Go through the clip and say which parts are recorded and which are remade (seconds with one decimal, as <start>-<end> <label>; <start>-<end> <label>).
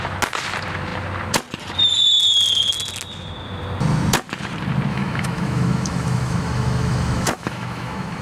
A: 0.0-4.9 recorded; 4.9-8.2 remade